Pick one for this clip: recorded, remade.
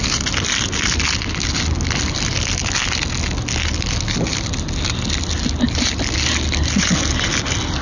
recorded